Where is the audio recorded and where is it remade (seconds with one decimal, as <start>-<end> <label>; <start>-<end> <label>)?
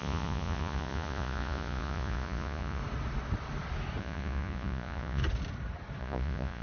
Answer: 0.0-2.8 remade; 2.8-4.0 recorded; 4.0-5.2 remade; 5.2-6.0 recorded; 6.0-6.6 remade